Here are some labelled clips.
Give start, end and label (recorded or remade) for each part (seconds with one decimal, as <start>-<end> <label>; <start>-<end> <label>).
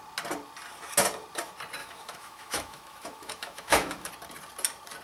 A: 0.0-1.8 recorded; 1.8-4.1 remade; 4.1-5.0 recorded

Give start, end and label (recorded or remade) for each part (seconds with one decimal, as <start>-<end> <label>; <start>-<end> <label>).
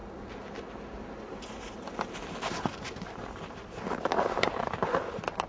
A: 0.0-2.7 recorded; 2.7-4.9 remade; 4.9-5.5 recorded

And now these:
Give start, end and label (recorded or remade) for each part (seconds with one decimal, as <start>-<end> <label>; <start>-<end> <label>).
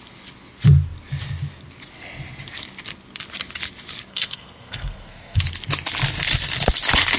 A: 0.0-4.1 recorded; 4.1-5.4 remade; 5.4-7.2 recorded